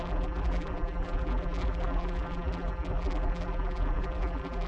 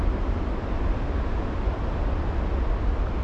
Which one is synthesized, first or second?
first